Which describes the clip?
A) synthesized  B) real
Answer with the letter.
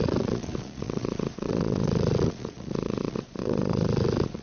A